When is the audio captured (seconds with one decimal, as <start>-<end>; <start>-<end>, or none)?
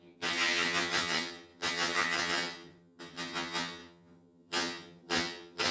none